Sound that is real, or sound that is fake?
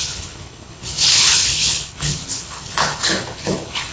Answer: fake